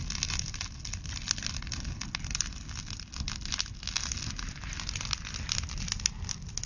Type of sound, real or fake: real